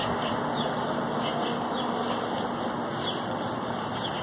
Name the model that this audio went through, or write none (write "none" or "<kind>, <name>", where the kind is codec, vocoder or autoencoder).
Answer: none